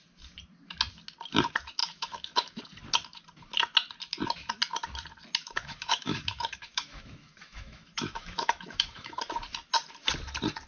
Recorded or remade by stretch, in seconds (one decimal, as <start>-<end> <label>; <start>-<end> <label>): 0.0-1.8 recorded; 1.8-2.6 remade; 2.6-5.4 recorded; 5.4-9.2 remade; 9.2-10.7 recorded